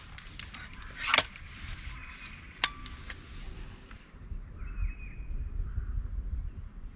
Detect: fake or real real